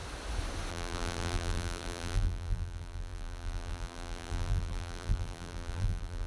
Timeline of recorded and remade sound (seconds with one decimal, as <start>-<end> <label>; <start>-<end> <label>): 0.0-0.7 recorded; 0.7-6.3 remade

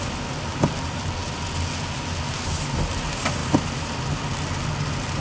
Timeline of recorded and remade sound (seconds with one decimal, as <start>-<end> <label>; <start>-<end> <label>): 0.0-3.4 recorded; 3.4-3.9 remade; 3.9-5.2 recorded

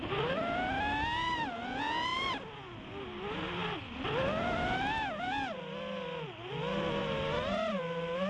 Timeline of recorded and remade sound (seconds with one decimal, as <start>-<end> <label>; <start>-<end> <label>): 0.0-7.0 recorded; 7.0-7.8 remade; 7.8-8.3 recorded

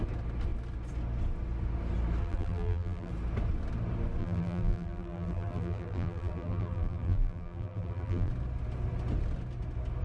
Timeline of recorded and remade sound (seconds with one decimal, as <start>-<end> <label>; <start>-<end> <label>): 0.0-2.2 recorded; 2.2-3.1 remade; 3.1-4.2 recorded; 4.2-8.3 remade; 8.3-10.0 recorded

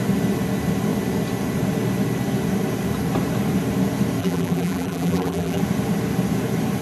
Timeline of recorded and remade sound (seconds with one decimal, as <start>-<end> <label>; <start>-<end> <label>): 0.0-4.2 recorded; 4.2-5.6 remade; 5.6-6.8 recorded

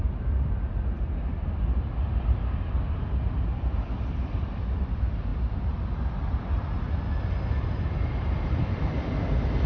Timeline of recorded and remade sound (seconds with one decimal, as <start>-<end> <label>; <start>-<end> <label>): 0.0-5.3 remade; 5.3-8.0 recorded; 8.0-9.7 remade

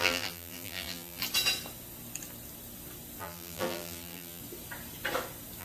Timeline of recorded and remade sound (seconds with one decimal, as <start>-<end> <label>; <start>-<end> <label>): 0.0-1.2 remade; 1.2-3.2 recorded; 3.2-4.4 remade; 4.4-5.6 recorded